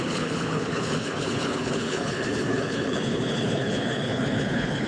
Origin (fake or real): fake